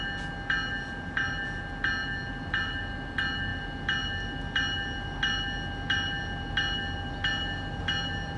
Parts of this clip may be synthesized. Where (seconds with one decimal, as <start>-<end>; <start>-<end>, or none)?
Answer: none